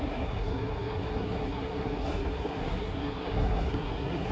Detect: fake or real fake